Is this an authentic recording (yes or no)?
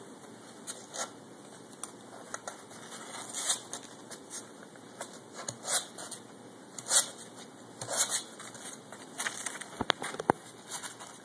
yes